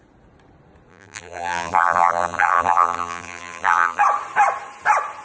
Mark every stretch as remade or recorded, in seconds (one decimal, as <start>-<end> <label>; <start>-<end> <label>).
0.0-0.9 recorded; 0.9-4.0 remade; 4.0-5.2 recorded